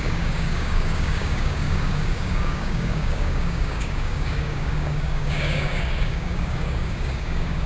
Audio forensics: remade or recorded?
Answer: remade